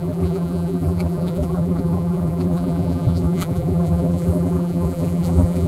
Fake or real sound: fake